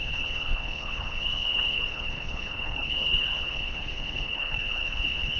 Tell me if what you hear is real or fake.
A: fake